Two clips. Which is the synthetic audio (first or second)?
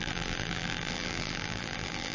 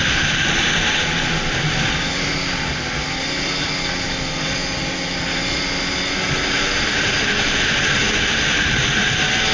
first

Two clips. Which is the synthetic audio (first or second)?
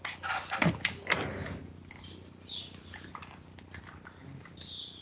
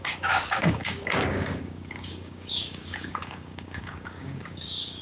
second